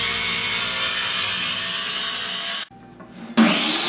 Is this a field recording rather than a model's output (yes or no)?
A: yes